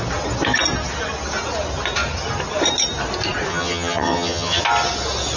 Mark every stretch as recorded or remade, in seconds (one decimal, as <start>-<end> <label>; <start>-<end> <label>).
0.0-3.5 recorded; 3.5-4.6 remade; 4.6-5.4 recorded